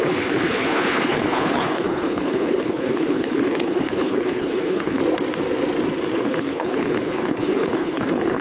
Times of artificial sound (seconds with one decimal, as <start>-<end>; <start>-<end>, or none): 0.0-5.0; 6.1-8.4